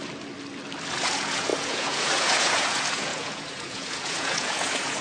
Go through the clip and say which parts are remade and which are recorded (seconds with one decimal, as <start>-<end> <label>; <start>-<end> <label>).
0.0-0.9 recorded; 0.9-5.0 remade